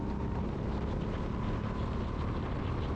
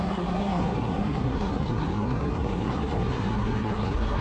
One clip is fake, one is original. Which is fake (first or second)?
second